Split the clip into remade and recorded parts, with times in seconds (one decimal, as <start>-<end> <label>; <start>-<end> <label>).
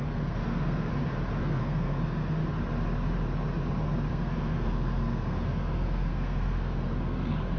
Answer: 0.0-0.9 remade; 0.9-1.4 recorded; 1.4-2.4 remade; 2.4-4.1 recorded; 4.1-7.6 remade